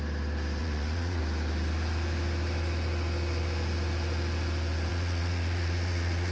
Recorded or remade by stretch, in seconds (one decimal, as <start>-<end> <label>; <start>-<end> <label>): 0.0-0.6 recorded; 0.6-1.2 remade; 1.2-4.9 recorded; 4.9-6.3 remade